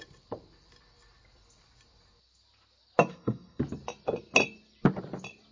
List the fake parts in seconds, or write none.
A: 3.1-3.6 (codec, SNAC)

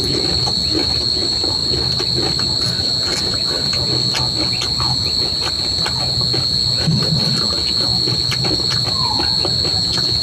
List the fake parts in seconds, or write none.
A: none

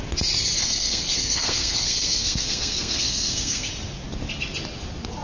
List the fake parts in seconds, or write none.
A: 0.6-3.7 (codec, SNAC)

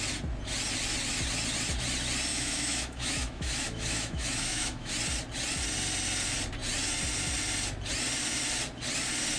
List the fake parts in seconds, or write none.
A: 2.3-4.9 (autoencoder, DAC-VAE)

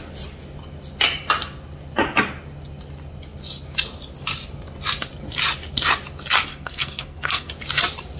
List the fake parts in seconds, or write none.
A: 6.5-7.5 (codec, SNAC)

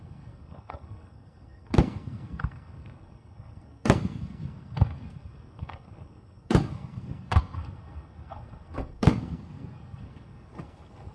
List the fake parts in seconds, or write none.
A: 0.0-11.1 (codec, SNAC)

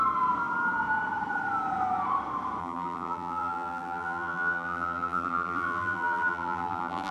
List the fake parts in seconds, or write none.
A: 2.6-7.1 (vocoder, BigVGAN v2)